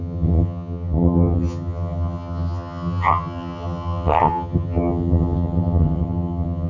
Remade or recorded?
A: remade